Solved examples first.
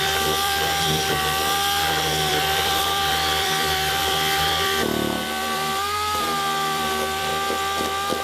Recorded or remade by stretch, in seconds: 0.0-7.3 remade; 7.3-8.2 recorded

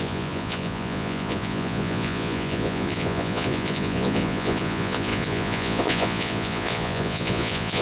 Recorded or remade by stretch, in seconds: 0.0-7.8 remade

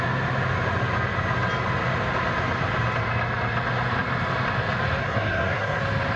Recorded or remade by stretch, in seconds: 0.0-5.0 recorded; 5.0-5.8 remade; 5.8-6.2 recorded

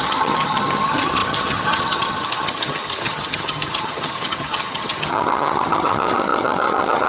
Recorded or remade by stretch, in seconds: 0.0-7.1 remade

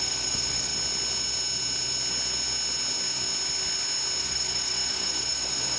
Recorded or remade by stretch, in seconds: 0.0-0.7 remade; 0.7-4.2 recorded; 4.2-5.8 remade

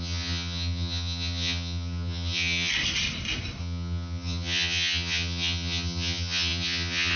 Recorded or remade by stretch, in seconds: 0.0-2.7 remade; 2.7-3.6 recorded; 3.6-7.2 remade

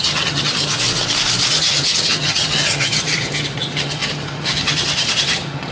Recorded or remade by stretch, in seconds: 0.0-0.8 remade; 0.8-1.5 recorded; 1.5-5.7 remade